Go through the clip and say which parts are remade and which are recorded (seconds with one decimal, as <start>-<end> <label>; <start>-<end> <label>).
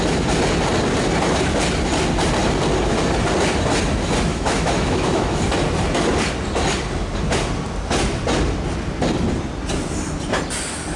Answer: 0.0-4.3 recorded; 4.3-5.4 remade; 5.4-11.0 recorded